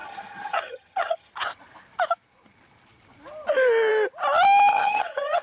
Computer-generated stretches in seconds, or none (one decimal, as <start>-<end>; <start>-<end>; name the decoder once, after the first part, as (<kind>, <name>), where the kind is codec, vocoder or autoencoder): 0.0-1.3 (vocoder, HiFi-GAN); 4.7-5.4

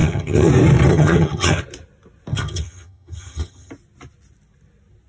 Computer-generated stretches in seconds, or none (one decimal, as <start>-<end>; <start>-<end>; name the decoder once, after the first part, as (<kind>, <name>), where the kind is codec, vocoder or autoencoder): 0.0-0.5 (vocoder, HiFi-GAN); 0.9-1.6; 2.3-3.7

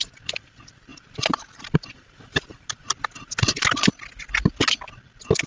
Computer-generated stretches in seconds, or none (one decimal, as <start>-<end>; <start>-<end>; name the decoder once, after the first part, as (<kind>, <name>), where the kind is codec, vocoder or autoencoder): none

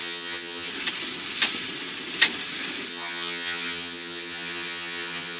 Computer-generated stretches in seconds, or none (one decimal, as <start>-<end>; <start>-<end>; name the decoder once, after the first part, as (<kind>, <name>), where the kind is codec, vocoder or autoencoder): 0.0-0.7 (vocoder, HiFi-GAN); 2.9-5.4

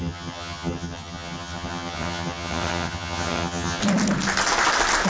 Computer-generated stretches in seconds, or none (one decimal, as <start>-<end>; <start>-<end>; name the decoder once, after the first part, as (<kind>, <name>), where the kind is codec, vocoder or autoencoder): 0.0-3.8 (vocoder, HiFi-GAN)

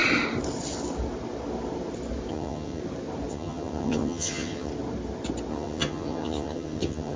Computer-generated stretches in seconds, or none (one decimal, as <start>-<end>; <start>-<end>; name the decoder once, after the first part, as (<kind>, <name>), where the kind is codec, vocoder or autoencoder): 2.3-2.8 (vocoder, HiFi-GAN); 3.3-4.7; 5.5-7.2